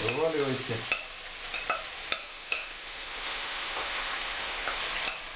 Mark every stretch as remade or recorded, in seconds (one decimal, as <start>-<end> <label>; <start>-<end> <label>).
0.0-2.2 recorded; 2.2-4.8 remade; 4.8-5.4 recorded